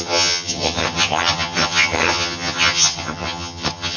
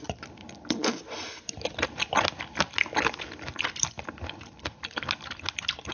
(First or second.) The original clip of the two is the second